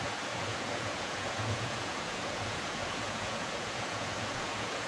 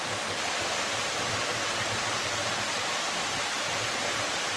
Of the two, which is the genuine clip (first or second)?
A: second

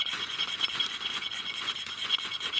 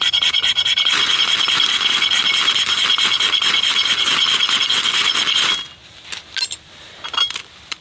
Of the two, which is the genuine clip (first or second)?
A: second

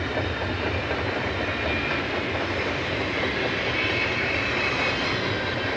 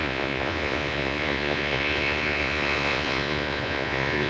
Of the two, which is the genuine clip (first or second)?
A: first